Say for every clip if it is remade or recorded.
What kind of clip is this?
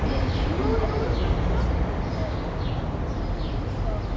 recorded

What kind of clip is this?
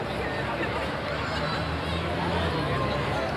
recorded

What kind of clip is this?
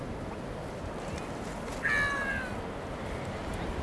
recorded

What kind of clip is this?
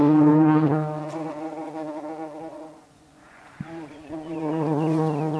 remade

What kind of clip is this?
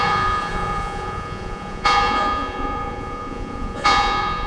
remade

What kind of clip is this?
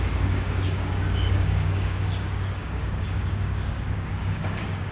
remade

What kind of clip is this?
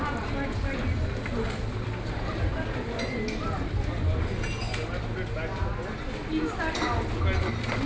recorded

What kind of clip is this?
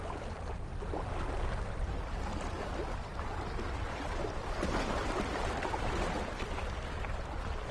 recorded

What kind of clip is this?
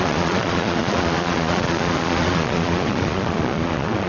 remade